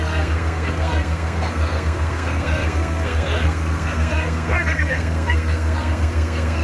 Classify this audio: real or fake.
fake